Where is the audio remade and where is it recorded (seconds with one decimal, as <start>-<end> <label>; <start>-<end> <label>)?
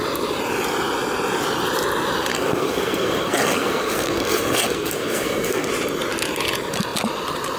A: 0.0-2.3 recorded; 2.3-5.7 remade; 5.7-7.6 recorded